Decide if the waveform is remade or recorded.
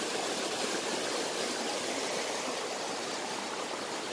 recorded